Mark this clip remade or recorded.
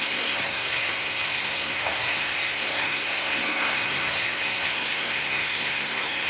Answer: remade